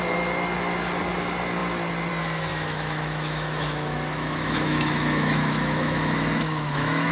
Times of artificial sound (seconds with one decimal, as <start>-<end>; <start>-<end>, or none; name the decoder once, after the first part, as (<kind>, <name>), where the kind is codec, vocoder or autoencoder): 2.5-7.1 (autoencoder, DAC-VAE)